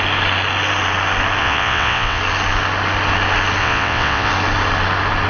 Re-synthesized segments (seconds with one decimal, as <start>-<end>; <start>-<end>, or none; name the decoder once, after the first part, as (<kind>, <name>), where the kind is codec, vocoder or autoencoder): 1.4-2.2 (vocoder, WaveNeXt); 3.6-4.3